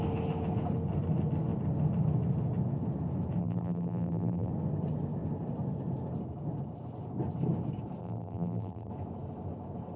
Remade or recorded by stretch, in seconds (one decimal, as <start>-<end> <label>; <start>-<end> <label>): 0.0-3.4 recorded; 3.4-4.5 remade; 4.5-8.0 recorded; 8.0-8.9 remade; 8.9-10.0 recorded